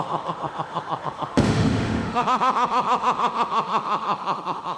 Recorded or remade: remade